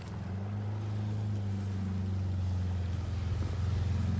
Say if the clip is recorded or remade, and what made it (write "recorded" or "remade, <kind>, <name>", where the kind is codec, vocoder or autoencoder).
recorded